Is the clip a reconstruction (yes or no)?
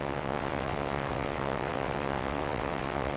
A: yes